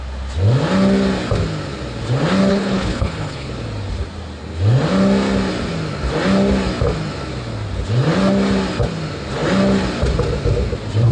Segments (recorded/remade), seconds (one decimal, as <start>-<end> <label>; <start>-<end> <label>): 0.0-2.5 recorded; 2.5-3.5 remade; 3.5-11.1 recorded

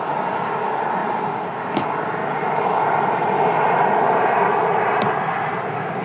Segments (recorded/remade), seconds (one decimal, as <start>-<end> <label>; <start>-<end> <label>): 0.0-6.0 recorded

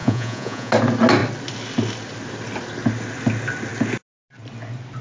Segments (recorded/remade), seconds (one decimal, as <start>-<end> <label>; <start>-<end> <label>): 0.0-0.7 remade; 0.7-5.0 recorded